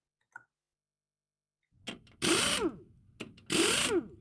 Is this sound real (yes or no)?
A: yes